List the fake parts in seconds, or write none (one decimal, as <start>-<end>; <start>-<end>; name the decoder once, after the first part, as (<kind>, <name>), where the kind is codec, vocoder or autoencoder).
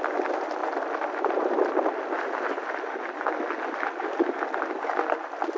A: 0.0-0.6 (vocoder, BigVGAN v2); 1.2-2.6